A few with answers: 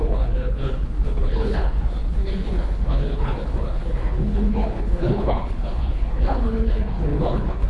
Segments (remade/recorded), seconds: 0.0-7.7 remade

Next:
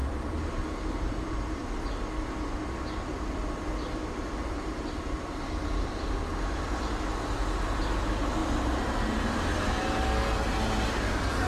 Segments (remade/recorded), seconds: 0.0-1.7 remade; 1.7-3.1 recorded; 3.1-6.6 remade; 6.6-8.4 recorded; 8.4-9.0 remade; 9.0-11.5 recorded

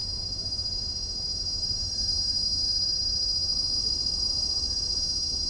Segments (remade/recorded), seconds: 0.0-3.5 recorded; 3.5-5.0 remade; 5.0-5.5 recorded